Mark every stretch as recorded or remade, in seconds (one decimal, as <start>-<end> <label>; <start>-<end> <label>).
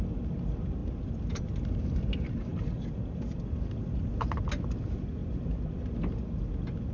0.0-6.9 recorded